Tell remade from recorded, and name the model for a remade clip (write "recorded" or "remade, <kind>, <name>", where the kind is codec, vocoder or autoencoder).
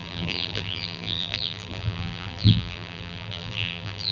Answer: remade, vocoder, BigVGAN v2